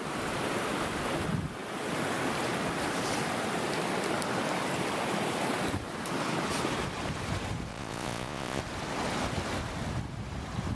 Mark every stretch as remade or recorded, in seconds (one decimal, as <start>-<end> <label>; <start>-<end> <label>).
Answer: 0.0-7.7 recorded; 7.7-8.6 remade; 8.6-10.7 recorded